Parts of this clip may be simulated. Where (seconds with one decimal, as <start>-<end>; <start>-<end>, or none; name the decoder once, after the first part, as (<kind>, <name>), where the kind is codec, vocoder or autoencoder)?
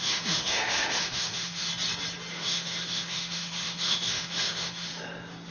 0.0-1.7 (autoencoder, DAC-VAE); 2.3-4.9